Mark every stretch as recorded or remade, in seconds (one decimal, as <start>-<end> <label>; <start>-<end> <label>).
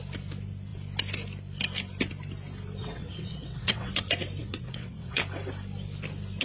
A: 0.0-2.8 recorded; 2.8-3.9 remade; 3.9-4.4 recorded; 4.4-5.2 remade; 5.2-6.4 recorded